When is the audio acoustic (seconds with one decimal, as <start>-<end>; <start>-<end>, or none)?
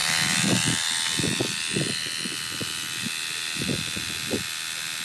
0.0-5.0